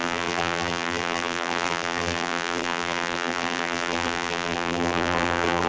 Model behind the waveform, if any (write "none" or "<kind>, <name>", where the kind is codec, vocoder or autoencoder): vocoder, BigVGAN v2